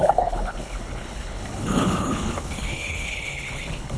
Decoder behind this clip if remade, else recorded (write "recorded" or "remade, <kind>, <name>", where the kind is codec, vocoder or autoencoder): remade, codec, HILCodec